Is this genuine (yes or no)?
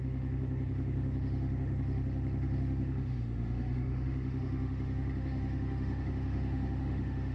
no